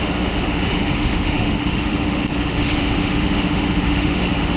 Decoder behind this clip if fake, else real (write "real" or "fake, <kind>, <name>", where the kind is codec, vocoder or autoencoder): fake, autoencoder, DAC-VAE